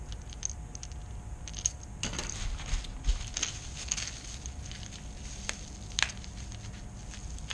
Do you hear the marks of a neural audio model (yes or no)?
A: no